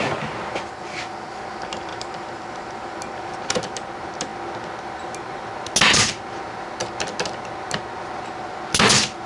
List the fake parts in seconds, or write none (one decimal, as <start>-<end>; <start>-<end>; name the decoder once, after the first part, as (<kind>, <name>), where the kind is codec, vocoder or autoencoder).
none